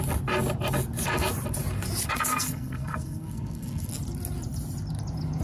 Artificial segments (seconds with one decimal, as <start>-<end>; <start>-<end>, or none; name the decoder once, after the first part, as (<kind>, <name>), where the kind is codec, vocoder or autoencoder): 2.3-3.9 (codec, SNAC)